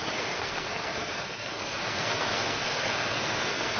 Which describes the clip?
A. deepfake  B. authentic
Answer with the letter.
A